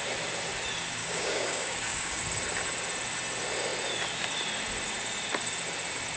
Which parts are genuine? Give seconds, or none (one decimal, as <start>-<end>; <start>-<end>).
0.0-1.0; 2.2-6.2